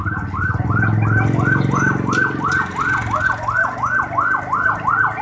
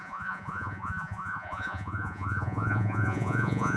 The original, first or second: first